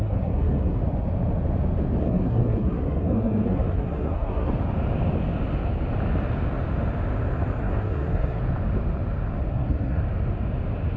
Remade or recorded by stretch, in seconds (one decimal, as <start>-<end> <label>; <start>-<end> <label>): 0.0-0.8 remade; 0.8-2.0 recorded; 2.0-4.5 remade; 4.5-7.6 recorded; 7.6-8.4 remade; 8.4-9.5 recorded; 9.5-10.0 remade; 10.0-11.0 recorded